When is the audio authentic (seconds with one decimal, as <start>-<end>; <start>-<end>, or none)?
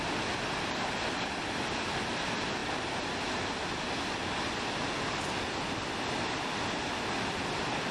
0.0-7.9